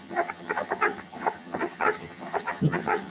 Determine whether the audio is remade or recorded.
remade